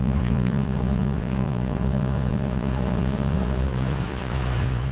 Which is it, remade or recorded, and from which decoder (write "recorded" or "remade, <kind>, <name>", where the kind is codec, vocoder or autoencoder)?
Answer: remade, vocoder, Vocos